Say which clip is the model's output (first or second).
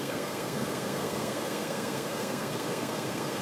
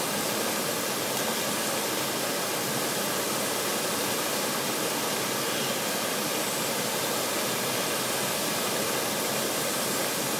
first